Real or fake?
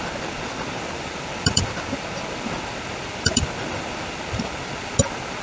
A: real